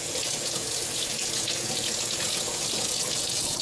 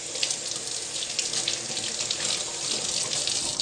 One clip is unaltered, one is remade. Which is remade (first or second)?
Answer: first